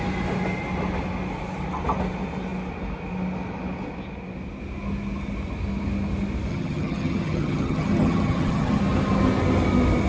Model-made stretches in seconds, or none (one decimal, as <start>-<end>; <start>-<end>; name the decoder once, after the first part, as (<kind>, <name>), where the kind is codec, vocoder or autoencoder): 6.5-8.8 (vocoder, HiFi-GAN)